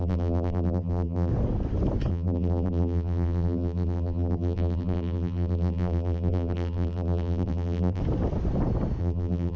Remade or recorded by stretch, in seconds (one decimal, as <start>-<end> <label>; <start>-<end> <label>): 0.0-1.3 remade; 1.3-2.1 recorded; 2.1-8.0 remade; 8.0-9.0 recorded; 9.0-9.6 remade